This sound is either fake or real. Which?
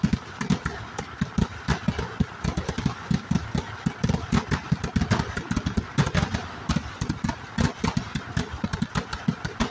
real